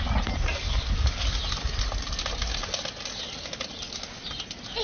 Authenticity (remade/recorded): recorded